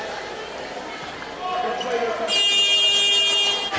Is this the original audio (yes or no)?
yes